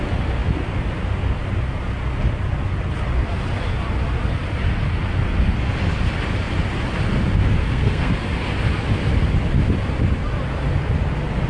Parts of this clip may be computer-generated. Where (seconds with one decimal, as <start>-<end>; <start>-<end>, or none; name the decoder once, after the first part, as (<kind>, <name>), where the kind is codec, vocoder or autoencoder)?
7.6-8.1 (codec, SNAC)